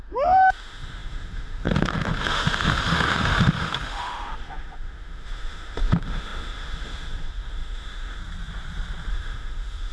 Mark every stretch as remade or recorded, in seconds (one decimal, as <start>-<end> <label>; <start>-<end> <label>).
0.0-8.2 remade; 8.2-9.1 recorded; 9.1-9.9 remade